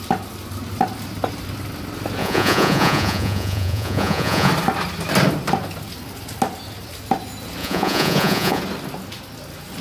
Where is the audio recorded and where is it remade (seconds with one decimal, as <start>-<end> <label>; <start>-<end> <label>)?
0.0-2.2 recorded; 2.2-4.5 remade; 4.5-7.6 recorded; 7.6-8.6 remade; 8.6-9.8 recorded